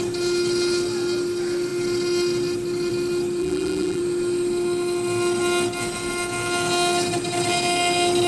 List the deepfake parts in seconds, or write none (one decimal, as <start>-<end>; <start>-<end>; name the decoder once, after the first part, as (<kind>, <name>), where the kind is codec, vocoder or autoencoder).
3.4-4.0 (vocoder, BigVGAN v2)